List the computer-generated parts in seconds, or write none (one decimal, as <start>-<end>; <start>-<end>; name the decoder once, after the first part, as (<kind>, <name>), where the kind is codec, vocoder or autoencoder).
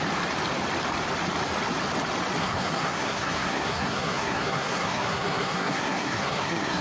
2.4-6.8 (codec, SNAC)